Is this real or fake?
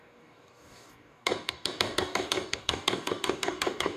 fake